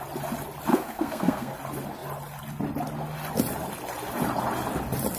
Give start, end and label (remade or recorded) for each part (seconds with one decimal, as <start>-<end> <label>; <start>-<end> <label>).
0.0-0.7 recorded; 0.7-1.5 remade; 1.5-5.2 recorded